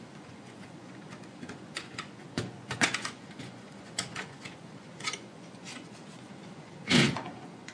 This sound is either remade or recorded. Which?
remade